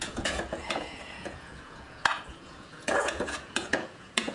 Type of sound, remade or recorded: remade